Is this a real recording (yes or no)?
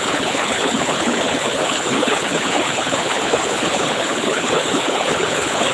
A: no